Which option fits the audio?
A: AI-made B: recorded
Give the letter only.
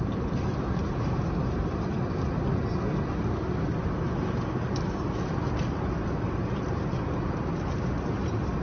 B